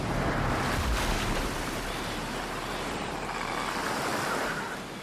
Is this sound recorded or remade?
recorded